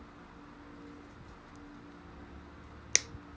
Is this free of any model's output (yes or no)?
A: yes